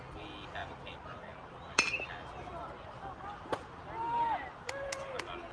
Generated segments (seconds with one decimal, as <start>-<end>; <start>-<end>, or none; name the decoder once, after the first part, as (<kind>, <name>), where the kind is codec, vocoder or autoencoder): none